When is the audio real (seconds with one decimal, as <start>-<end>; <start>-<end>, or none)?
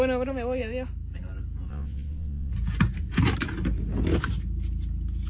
0.0-1.7; 2.5-5.3